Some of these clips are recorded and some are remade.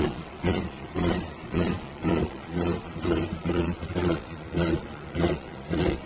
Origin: remade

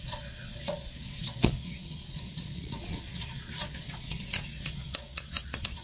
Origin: remade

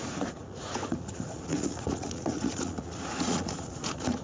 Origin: remade